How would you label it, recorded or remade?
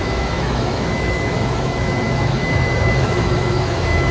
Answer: remade